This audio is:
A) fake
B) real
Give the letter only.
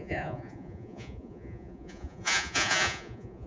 A